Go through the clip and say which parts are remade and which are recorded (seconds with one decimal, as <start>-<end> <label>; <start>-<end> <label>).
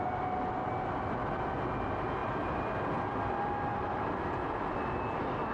0.0-2.2 recorded; 2.2-5.5 remade